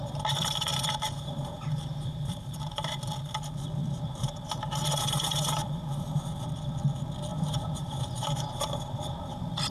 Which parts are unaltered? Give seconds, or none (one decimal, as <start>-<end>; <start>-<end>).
0.0-0.7; 3.0-3.8; 6.2-7.3